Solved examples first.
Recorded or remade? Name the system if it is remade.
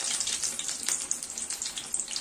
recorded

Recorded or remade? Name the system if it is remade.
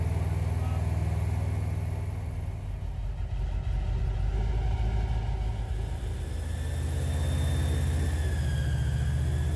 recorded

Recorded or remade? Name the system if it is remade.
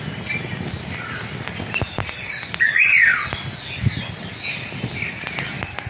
recorded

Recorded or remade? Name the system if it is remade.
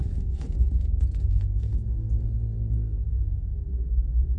remade, codec, SNAC